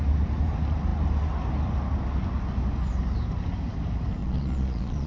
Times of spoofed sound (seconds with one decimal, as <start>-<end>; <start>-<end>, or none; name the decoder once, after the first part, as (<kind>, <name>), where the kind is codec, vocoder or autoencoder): 4.2-5.1 (vocoder, Vocos)